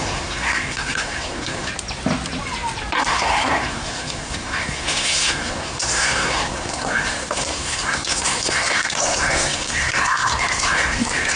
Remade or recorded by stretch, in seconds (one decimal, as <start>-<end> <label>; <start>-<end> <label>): 0.0-1.7 remade; 1.7-3.0 recorded; 3.0-11.4 remade